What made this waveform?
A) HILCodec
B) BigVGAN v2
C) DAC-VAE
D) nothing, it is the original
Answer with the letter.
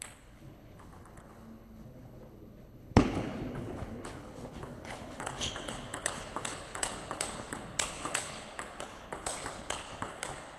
A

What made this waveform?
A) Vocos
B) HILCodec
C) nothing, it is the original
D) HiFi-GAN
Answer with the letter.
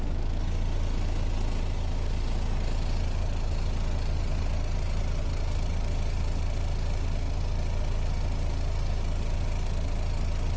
C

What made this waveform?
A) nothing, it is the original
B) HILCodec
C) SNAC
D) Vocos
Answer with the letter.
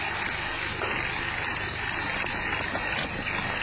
A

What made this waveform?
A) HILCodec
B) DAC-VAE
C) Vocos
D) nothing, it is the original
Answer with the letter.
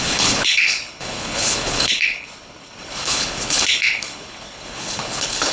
A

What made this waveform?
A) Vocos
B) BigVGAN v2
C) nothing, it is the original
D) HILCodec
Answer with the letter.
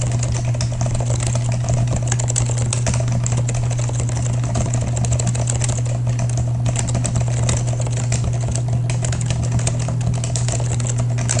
C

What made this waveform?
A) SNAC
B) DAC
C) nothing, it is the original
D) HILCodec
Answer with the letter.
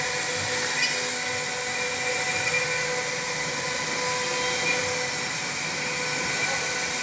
C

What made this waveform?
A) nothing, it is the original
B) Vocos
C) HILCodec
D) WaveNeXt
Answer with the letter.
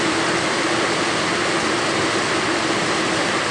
A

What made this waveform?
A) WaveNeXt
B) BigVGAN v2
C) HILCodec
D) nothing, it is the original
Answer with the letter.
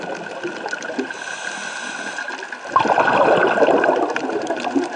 D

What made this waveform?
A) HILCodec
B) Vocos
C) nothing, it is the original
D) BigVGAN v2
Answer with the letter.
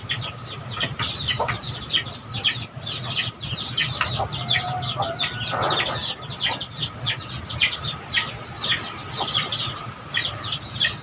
C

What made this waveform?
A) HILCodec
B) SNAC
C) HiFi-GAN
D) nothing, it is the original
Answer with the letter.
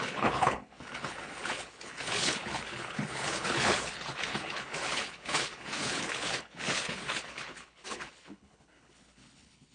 A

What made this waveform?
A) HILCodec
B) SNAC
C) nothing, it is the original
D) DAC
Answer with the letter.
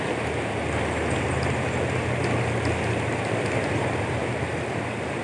C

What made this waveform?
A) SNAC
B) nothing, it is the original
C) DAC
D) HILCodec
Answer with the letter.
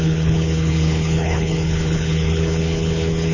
D